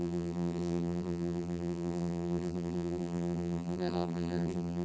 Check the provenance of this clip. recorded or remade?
remade